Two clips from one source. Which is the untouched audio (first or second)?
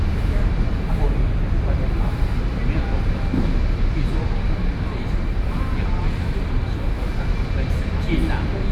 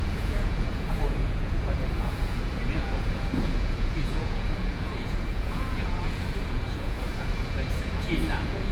first